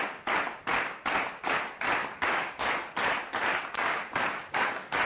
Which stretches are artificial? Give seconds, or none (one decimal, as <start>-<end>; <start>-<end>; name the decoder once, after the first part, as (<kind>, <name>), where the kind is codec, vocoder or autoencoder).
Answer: 2.0-2.7 (codec, DAC); 3.5-5.1